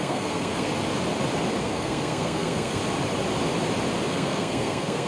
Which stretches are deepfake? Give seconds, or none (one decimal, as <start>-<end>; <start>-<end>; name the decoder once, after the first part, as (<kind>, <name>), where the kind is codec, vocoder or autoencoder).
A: 0.0-0.7 (codec, SNAC); 1.6-2.8; 4.1-5.1

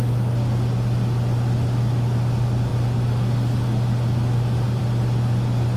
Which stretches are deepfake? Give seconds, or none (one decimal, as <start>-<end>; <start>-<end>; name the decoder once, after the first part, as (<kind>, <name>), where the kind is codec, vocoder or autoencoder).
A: none